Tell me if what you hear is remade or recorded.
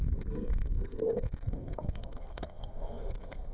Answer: remade